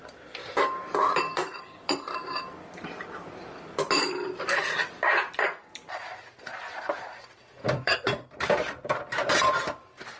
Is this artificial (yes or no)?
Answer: yes